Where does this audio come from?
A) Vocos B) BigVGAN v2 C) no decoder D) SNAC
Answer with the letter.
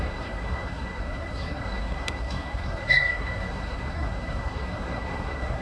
D